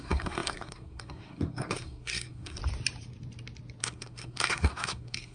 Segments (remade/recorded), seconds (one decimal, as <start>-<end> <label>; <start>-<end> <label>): 0.0-2.6 remade; 2.6-3.8 recorded; 3.8-5.3 remade